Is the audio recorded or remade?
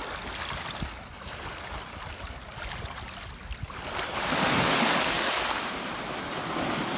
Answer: recorded